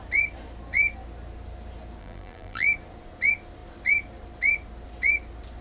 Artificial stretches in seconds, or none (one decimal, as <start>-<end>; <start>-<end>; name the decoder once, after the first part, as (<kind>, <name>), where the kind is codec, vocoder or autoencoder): 2.0-2.7 (vocoder, BigVGAN v2)

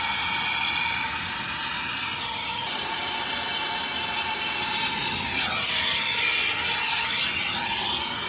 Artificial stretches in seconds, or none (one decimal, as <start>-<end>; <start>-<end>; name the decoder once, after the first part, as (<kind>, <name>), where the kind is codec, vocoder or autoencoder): none

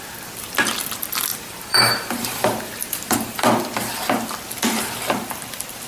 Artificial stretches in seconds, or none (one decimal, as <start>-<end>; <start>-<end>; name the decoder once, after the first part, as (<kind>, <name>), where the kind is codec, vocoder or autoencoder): 1.3-3.5 (vocoder, BigVGAN v2)

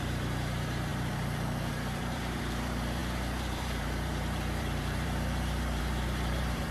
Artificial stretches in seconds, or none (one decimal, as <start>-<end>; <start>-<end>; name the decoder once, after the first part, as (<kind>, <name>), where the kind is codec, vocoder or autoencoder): 0.0-6.7 (vocoder, BigVGAN v2)

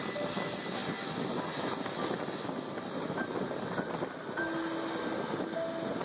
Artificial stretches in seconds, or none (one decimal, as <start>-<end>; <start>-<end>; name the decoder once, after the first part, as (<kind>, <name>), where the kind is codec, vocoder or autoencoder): none

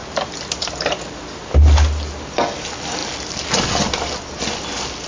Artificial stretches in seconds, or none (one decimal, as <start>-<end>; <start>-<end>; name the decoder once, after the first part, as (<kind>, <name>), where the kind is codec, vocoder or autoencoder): none